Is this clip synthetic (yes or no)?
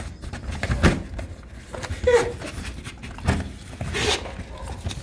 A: no